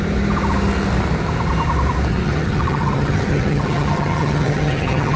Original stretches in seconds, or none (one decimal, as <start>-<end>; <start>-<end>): 0.0-2.1